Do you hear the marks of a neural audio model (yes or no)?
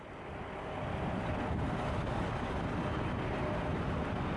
no